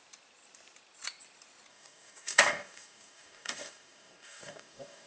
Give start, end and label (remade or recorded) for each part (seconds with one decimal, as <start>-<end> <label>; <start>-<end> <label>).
0.0-1.7 recorded; 1.7-5.1 remade